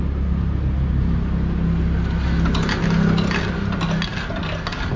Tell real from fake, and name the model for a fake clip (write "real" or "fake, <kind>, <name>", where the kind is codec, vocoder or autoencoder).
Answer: real